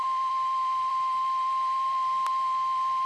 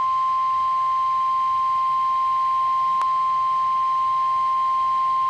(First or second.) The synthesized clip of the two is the first